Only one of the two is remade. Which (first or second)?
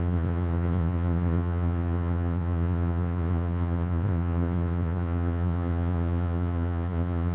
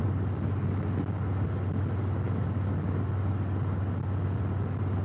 first